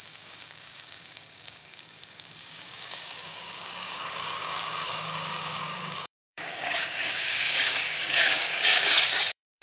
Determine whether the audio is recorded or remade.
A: remade